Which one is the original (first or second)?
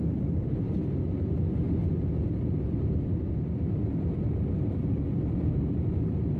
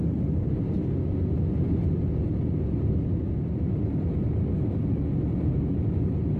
second